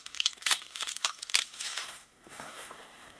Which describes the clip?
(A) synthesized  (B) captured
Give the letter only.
A